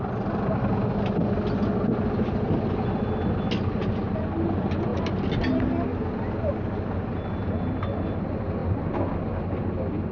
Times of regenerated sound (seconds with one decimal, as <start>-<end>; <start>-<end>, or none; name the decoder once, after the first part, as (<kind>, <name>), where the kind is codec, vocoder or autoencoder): none

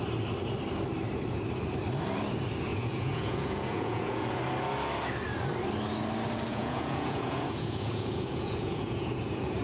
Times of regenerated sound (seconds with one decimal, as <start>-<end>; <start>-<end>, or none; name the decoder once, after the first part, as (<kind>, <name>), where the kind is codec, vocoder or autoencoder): 2.7-4.4 (vocoder, Vocos); 6.5-9.6

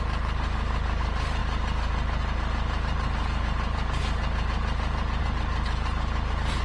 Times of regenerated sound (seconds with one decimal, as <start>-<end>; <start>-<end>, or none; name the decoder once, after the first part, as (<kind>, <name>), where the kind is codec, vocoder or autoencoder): none

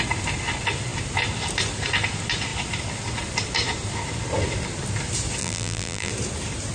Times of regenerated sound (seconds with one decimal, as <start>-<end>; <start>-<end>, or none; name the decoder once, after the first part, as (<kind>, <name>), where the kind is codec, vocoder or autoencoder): 5.4-6.1 (vocoder, BigVGAN v2)

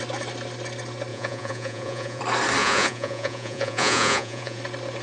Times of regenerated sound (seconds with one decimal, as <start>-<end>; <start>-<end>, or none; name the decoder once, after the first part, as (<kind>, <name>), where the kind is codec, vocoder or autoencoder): 1.1-2.2 (vocoder, Vocos); 2.6-4.6

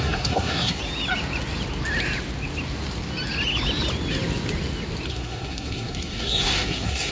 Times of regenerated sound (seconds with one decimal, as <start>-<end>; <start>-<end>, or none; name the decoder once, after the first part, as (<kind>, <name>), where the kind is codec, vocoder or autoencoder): 0.0-0.8 (codec, SNAC); 5.1-7.1